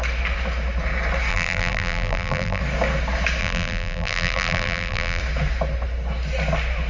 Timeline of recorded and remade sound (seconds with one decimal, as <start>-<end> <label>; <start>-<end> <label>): 0.0-1.3 recorded; 1.3-2.6 remade; 2.6-3.4 recorded; 3.4-5.2 remade; 5.2-6.9 recorded